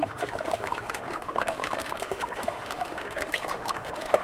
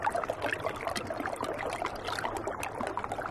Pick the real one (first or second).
second